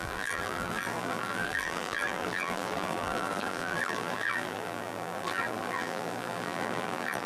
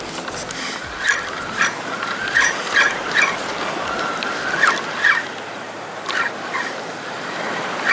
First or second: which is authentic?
second